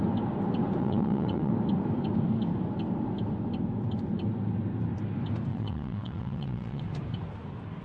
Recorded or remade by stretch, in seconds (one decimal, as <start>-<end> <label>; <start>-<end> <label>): 0.0-0.8 recorded; 0.8-1.5 remade; 1.5-5.5 recorded; 5.5-6.8 remade; 6.8-7.8 recorded